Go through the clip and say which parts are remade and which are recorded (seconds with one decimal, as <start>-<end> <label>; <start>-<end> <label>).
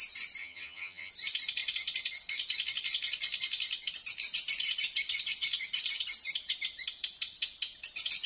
0.0-0.4 recorded; 0.4-1.1 remade; 1.1-8.3 recorded